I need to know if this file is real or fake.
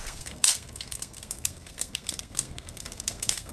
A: fake